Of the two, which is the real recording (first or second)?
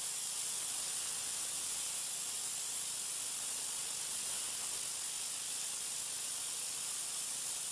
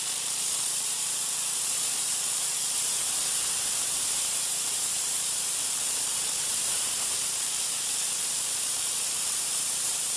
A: first